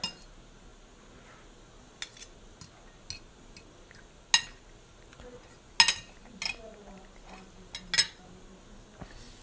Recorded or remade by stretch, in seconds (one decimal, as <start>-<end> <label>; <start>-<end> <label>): 0.0-9.4 recorded